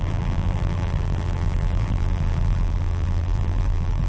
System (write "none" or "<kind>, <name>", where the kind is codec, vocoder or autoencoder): vocoder, BigVGAN v2